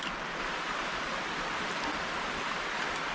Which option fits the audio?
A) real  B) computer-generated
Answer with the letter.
A